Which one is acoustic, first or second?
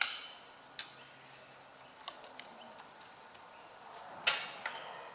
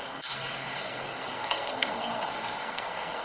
first